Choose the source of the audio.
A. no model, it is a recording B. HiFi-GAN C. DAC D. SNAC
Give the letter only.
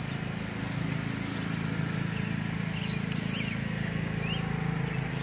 A